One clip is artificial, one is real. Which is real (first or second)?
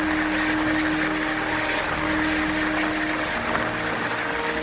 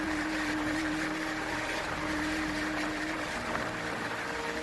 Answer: first